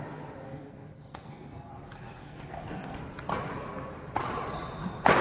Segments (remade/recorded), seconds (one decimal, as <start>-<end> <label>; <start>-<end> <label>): 0.0-0.5 recorded; 0.5-1.7 remade; 1.7-2.2 recorded; 2.2-3.0 remade; 3.0-5.2 recorded